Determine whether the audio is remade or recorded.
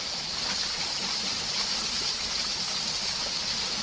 recorded